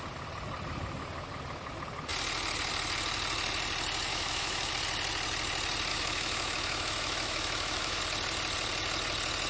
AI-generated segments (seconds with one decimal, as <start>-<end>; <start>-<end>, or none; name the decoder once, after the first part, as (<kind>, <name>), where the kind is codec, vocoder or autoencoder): 4.1-4.7 (autoencoder, DAC-VAE); 5.9-8.0